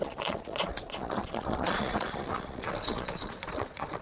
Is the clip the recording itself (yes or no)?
no